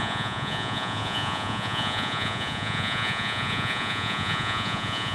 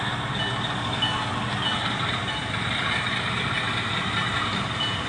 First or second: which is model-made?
first